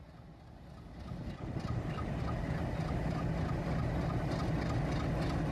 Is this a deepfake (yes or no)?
no